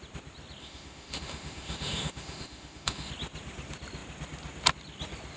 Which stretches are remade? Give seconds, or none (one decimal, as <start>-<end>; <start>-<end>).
0.6-3.1